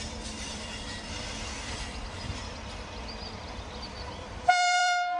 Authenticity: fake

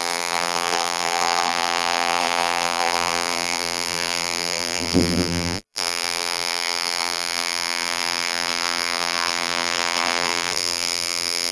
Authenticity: fake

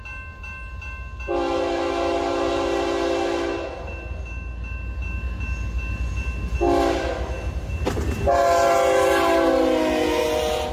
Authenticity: real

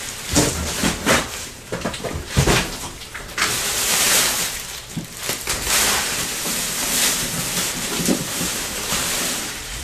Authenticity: fake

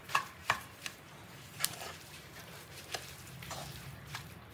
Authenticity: fake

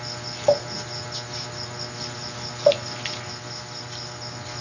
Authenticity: real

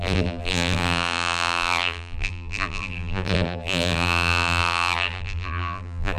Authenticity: fake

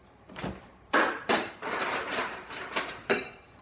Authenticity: fake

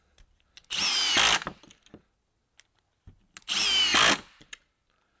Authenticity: real